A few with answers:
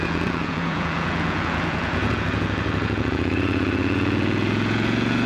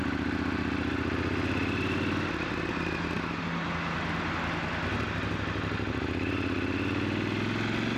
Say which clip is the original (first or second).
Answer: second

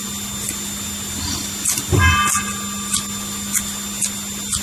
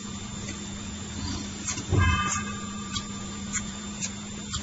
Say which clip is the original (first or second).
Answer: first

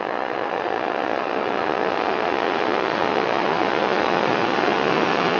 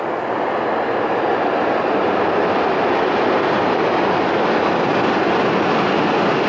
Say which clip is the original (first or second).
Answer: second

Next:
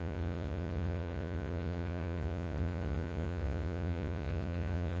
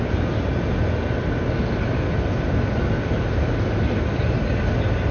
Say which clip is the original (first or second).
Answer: second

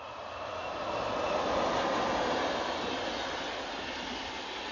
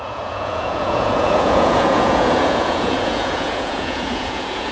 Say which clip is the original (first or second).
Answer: first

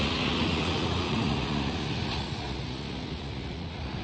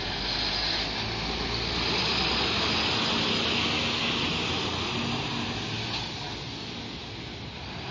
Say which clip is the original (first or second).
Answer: second